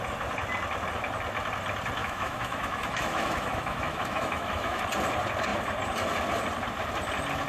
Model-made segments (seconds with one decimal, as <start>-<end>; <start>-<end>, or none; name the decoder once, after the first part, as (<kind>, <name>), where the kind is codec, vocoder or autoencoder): 2.0-4.8 (autoencoder, DAC-VAE)

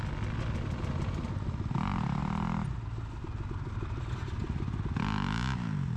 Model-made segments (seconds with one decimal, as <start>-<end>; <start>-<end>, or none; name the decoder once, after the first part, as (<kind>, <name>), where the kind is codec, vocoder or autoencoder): none

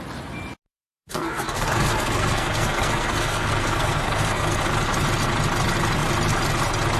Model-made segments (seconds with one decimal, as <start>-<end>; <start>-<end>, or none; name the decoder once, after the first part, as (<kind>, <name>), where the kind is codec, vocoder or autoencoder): 0.8-4.6 (codec, SNAC)

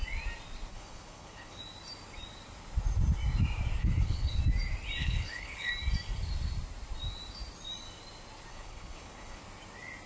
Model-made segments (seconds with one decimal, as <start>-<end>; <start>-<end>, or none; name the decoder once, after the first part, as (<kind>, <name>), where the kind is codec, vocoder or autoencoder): 0.7-1.6 (codec, HILCodec); 3.8-4.4; 5.0-5.7; 8.5-9.4

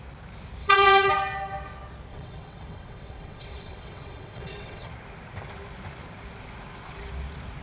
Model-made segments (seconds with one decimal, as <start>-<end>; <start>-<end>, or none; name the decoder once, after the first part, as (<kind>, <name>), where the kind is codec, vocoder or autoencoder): 0.6-1.1 (vocoder, WaveNeXt); 2.1-4.9

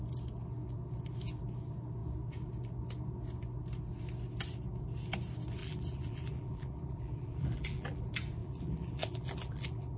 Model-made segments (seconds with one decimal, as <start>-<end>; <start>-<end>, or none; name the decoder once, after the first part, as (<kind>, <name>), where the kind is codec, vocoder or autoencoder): 5.6-8.0 (vocoder, BigVGAN v2); 8.4-10.0

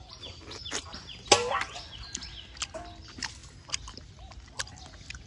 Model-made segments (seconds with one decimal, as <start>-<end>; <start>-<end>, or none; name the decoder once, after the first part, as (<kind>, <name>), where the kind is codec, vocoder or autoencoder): 3.4-4.8 (vocoder, BigVGAN v2)